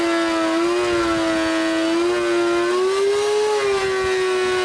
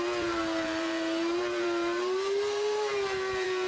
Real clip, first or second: first